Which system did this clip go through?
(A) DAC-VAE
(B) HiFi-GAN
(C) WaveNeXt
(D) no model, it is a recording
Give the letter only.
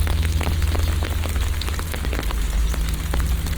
D